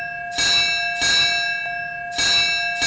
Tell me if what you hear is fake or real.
real